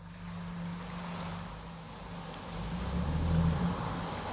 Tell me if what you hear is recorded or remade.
recorded